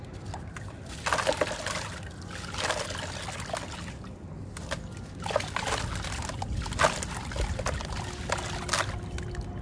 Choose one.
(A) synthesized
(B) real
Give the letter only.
B